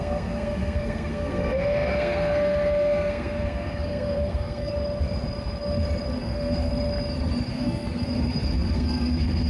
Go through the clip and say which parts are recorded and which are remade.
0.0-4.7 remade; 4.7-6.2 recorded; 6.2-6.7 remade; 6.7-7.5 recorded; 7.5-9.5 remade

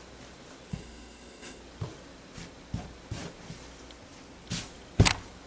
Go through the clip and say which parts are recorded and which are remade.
0.0-0.7 recorded; 0.7-1.6 remade; 1.6-5.5 recorded

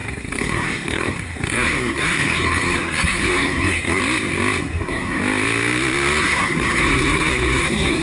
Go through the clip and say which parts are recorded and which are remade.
0.0-4.0 remade; 4.0-4.6 recorded; 4.6-5.2 remade; 5.2-6.2 recorded; 6.2-8.0 remade

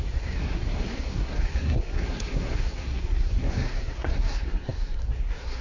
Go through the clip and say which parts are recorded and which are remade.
0.0-5.6 remade

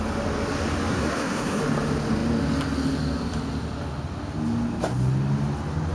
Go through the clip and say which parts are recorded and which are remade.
0.0-0.9 recorded; 0.9-1.6 remade; 1.6-5.9 recorded